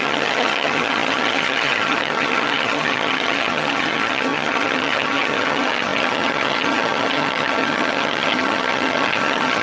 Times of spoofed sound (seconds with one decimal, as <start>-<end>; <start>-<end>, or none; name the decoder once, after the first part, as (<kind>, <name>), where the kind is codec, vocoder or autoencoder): 0.0-9.6 (vocoder, HiFi-GAN)